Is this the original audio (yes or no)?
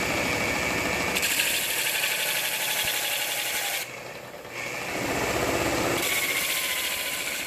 yes